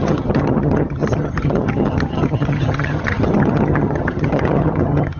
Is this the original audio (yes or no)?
no